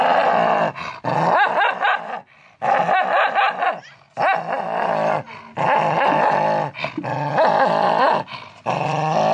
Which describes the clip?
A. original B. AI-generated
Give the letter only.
A